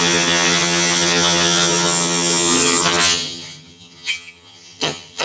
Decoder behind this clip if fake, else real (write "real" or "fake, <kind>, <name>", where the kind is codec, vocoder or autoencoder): fake, vocoder, HiFi-GAN